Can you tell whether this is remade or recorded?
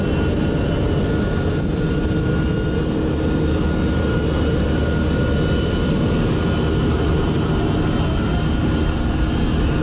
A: recorded